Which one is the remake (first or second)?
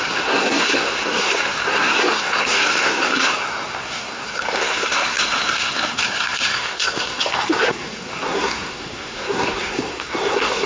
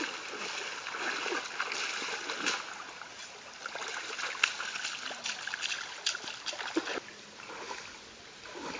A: first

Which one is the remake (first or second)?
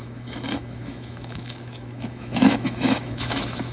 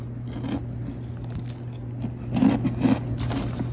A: first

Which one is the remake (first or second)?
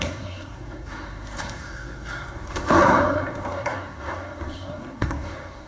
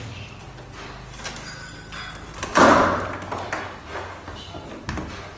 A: first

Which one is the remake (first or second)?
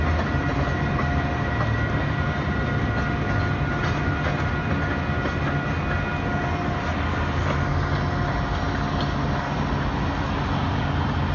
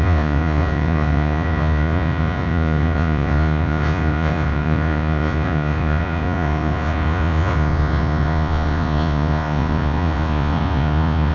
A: second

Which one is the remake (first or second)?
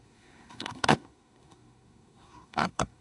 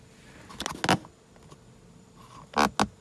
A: first